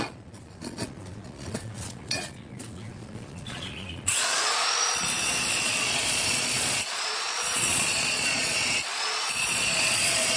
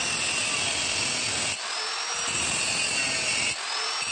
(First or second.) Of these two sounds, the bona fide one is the second